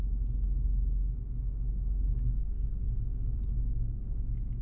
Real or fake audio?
real